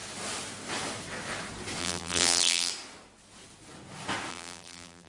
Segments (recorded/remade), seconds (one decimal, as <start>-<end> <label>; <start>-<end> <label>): 0.0-1.8 recorded; 1.8-2.7 remade; 2.7-4.3 recorded; 4.3-5.1 remade